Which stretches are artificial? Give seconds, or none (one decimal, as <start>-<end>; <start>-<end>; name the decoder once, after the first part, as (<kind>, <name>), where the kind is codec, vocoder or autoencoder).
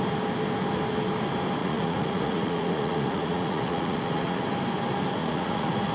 1.6-4.4 (vocoder, Vocos); 5.2-5.9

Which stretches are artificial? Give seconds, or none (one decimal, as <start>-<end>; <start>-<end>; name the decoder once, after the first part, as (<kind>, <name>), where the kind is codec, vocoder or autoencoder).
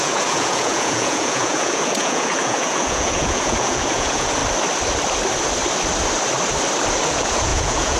0.0-4.4 (vocoder, Vocos); 7.1-8.0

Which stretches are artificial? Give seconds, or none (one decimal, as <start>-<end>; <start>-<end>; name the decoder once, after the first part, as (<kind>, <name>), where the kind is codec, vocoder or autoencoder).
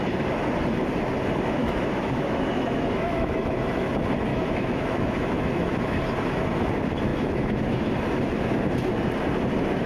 1.6-3.9 (autoencoder, DAC-VAE); 4.3-6.0; 7.1-7.9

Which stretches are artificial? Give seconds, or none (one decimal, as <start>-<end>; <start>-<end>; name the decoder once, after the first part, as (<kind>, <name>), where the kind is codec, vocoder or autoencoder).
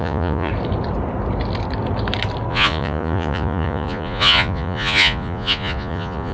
0.0-0.5 (vocoder, Vocos); 2.5-6.3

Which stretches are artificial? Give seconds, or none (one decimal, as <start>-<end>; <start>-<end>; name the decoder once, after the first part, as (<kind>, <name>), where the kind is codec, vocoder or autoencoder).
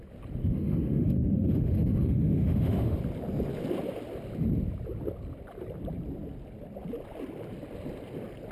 0.4-3.0 (autoencoder, DAC-VAE)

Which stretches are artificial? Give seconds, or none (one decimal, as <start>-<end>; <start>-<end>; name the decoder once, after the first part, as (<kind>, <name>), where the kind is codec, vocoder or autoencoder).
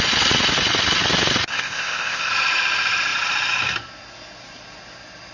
1.5-2.3 (codec, ZipCodec)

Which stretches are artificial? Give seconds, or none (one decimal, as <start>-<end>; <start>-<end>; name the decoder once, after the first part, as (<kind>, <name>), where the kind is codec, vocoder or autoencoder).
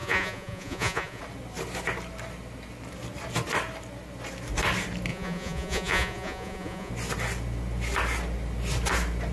0.0-1.2 (vocoder, Vocos); 5.1-6.9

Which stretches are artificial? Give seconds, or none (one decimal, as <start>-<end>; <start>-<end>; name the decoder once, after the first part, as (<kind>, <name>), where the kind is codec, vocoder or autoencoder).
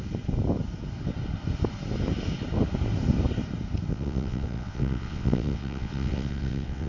3.9-6.9 (vocoder, WaveNeXt)